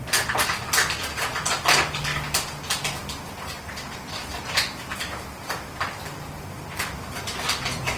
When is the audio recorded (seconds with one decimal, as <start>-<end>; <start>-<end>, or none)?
0.0-8.0